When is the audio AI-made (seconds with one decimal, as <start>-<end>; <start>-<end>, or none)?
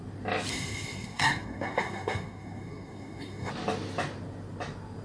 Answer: 0.5-3.5